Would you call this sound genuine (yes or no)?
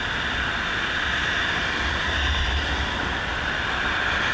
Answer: yes